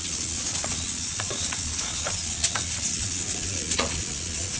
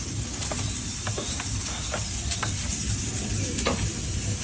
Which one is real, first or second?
second